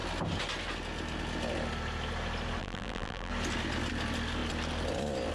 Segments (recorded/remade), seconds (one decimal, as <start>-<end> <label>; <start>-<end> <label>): 0.0-2.6 recorded; 2.6-3.3 remade; 3.3-5.3 recorded

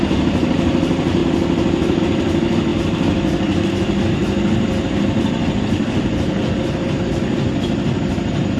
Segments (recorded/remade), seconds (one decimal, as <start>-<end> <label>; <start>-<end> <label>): 0.0-8.6 recorded

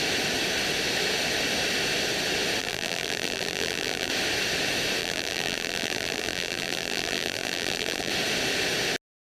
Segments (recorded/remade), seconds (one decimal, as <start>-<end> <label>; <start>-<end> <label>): 0.0-2.6 recorded; 2.6-4.1 remade; 4.1-5.0 recorded; 5.0-8.1 remade; 8.1-9.4 recorded

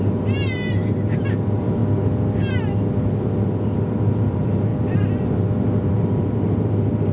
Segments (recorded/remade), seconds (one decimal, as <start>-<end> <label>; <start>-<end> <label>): 0.0-1.8 remade; 1.8-4.1 recorded; 4.1-4.7 remade; 4.7-5.9 recorded; 5.9-7.1 remade

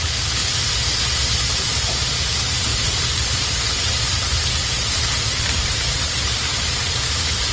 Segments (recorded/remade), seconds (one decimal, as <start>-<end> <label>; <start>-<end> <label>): 0.0-0.4 remade; 0.4-1.0 recorded; 1.0-4.6 remade; 4.6-5.4 recorded; 5.4-7.5 remade

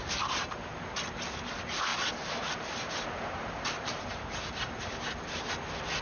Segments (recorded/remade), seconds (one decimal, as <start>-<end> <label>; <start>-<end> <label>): 0.0-1.9 recorded; 1.9-5.5 remade; 5.5-6.0 recorded

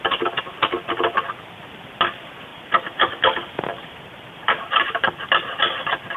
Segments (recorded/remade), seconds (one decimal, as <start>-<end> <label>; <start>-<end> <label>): 0.0-2.5 recorded; 2.5-3.2 remade; 3.2-3.7 recorded; 3.7-5.1 remade; 5.1-6.2 recorded

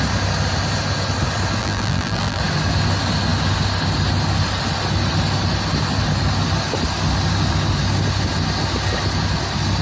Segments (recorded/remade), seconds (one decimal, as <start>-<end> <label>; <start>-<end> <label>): 0.0-1.6 recorded; 1.6-2.4 remade; 2.4-9.8 recorded